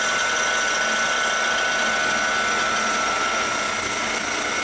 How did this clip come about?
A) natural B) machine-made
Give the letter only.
A